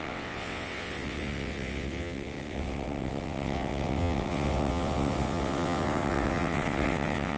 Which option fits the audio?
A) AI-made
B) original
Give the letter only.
A